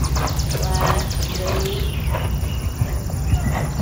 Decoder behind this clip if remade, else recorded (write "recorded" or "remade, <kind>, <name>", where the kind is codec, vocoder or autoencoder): recorded